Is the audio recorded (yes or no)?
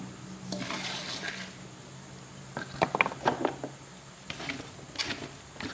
yes